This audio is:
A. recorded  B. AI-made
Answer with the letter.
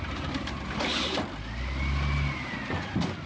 A